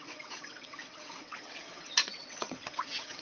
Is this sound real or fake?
fake